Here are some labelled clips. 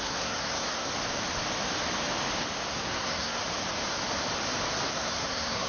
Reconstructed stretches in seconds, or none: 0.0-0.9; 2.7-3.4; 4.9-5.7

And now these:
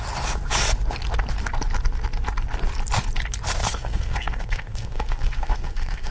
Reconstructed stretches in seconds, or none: 3.6-6.1

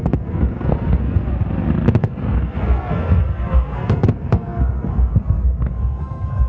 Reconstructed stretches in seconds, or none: 0.0-1.3; 2.0-6.5

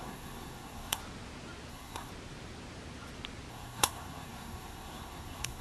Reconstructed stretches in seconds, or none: 0.0-1.0; 1.7-2.1; 3.5-5.6

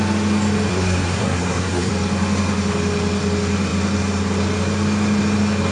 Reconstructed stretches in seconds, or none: 0.7-1.9

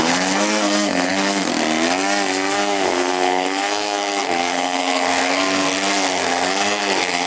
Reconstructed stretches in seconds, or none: 0.0-1.5; 2.5-7.3

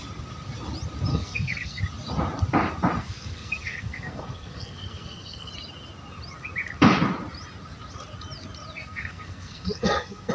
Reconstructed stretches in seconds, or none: 1.1-1.8; 3.0-5.5; 8.8-10.3

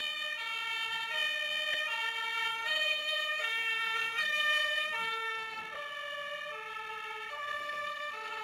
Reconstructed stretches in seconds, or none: 2.5-5.6; 7.3-8.4